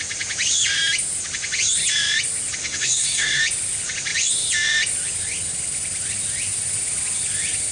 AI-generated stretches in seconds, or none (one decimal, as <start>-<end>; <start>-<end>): 2.6-3.4